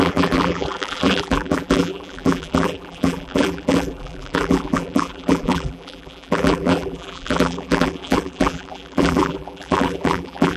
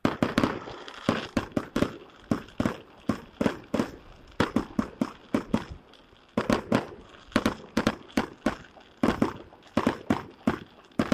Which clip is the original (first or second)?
second